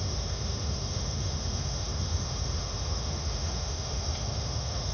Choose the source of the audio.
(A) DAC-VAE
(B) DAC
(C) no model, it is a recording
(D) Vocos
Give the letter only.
A